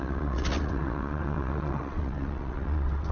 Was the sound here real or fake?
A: fake